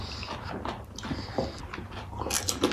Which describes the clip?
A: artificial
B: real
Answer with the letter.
B